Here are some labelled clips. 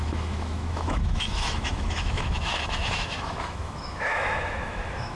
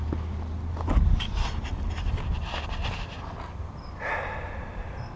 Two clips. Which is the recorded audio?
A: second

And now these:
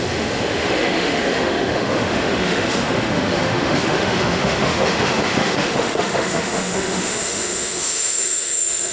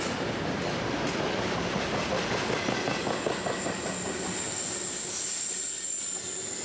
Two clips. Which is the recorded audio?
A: second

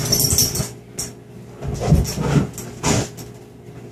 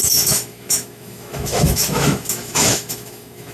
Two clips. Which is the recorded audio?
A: first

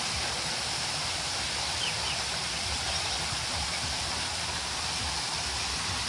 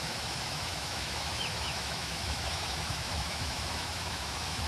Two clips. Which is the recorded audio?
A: first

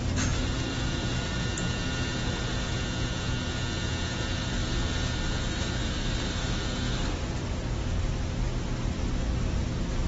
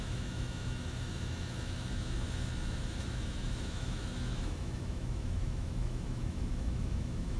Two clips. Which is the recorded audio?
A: first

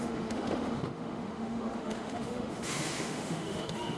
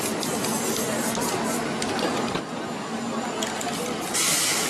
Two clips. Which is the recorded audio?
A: second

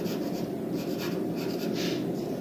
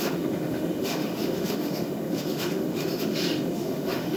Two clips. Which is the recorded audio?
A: first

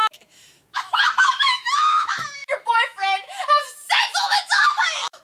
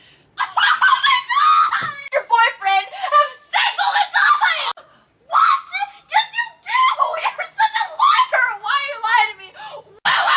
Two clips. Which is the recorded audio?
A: second